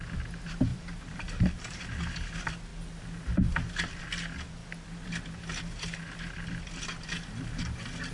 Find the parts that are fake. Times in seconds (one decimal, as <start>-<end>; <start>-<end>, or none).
0.7-1.8